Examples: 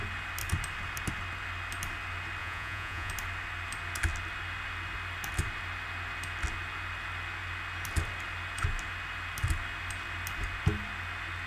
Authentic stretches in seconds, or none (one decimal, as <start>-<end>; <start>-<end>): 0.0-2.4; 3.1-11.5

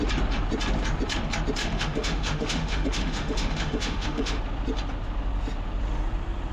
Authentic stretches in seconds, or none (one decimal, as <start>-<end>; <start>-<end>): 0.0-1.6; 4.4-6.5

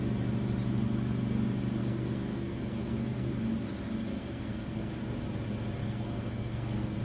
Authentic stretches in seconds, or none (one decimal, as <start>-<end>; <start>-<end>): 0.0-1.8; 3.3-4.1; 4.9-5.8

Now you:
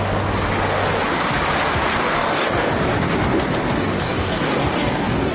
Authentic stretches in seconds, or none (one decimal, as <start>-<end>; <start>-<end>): 0.0-2.0; 2.7-4.0

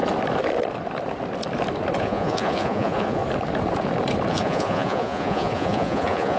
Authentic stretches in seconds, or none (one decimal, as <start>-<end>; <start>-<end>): 0.0-2.0; 3.2-4.3

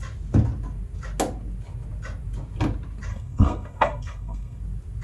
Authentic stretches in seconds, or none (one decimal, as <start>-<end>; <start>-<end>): 0.0-3.1; 4.6-5.0